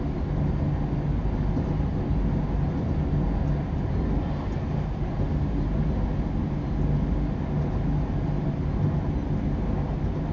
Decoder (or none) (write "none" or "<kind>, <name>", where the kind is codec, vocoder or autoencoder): none